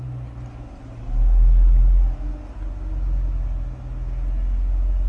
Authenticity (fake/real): real